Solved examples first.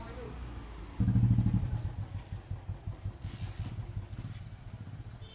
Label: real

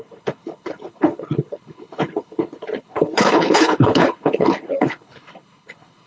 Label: fake